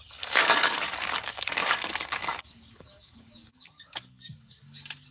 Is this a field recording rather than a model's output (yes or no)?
no